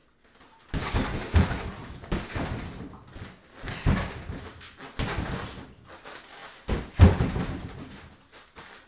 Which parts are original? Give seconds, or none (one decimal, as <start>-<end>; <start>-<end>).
0.0-8.9

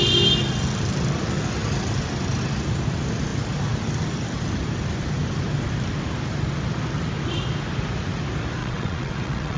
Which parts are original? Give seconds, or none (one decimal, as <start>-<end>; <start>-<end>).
0.0-8.6

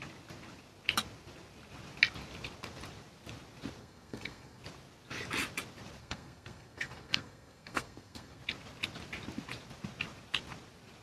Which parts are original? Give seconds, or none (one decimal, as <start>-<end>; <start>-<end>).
0.0-3.8; 4.6-6.0; 8.4-11.0